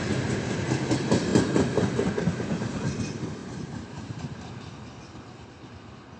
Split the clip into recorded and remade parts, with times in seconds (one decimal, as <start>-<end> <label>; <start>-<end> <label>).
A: 0.0-3.4 recorded; 3.4-4.5 remade; 4.5-6.2 recorded

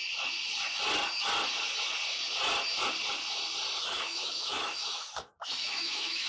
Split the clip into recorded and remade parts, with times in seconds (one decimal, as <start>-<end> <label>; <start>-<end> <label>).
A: 0.0-3.8 recorded; 3.8-6.3 remade

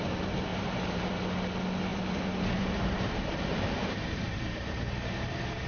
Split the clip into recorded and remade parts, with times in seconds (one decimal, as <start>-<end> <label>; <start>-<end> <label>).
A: 0.0-0.5 recorded; 0.5-1.1 remade; 1.1-1.9 recorded; 1.9-5.3 remade; 5.3-5.7 recorded

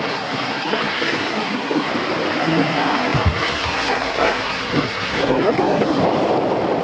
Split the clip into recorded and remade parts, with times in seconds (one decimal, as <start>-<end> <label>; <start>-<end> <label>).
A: 0.0-1.9 remade; 1.9-2.4 recorded; 2.4-6.0 remade; 6.0-6.8 recorded

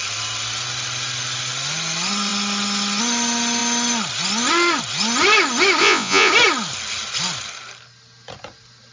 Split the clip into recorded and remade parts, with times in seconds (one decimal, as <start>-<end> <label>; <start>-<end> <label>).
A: 0.0-5.8 recorded; 5.8-6.3 remade; 6.3-8.9 recorded

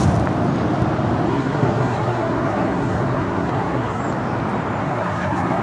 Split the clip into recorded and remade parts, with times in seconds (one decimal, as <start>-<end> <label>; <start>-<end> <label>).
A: 0.0-1.3 recorded; 1.3-4.0 remade; 4.0-4.8 recorded; 4.8-5.6 remade